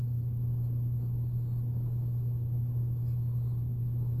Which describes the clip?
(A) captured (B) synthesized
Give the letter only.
A